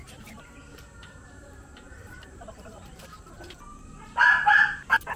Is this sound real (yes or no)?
no